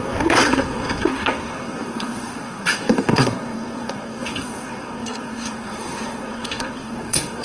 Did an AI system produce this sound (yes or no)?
yes